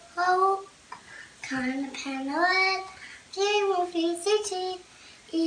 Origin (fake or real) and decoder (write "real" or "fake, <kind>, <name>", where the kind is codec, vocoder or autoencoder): real